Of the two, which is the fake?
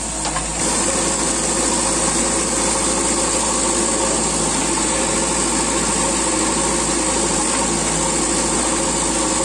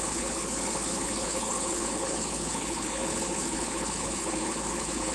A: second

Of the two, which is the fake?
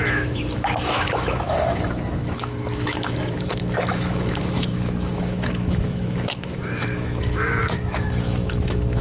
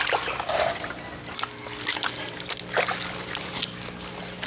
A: first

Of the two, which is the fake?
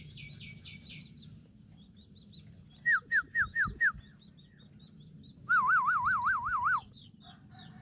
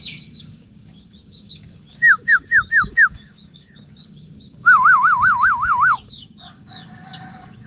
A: second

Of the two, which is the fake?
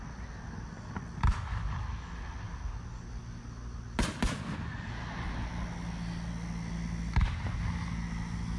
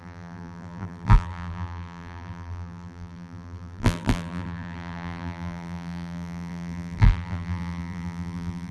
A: second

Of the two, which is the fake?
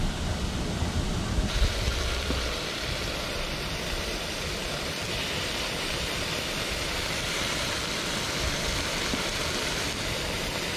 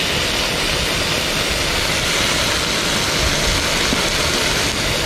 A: first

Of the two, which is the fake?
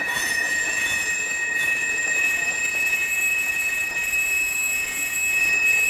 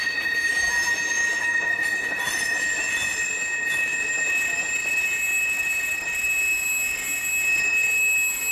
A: first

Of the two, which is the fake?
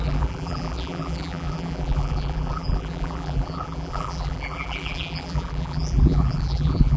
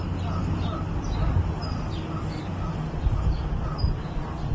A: first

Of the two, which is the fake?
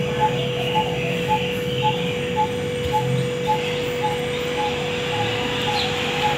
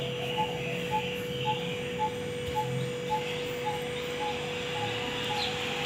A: first